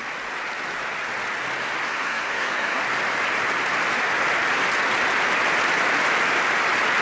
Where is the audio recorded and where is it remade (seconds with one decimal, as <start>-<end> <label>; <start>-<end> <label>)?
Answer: 0.0-1.9 recorded; 1.9-2.8 remade; 2.8-7.0 recorded